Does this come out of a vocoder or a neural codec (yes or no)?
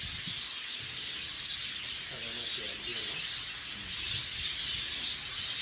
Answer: no